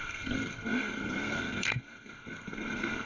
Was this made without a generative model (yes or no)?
no